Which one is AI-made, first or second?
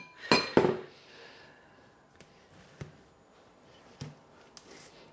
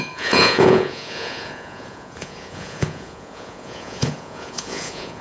second